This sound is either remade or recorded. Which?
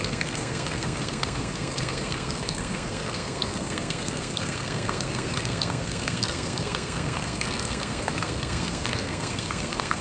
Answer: remade